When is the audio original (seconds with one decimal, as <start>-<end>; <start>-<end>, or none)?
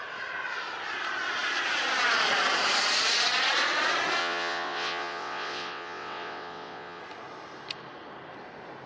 0.0-4.2; 7.0-8.9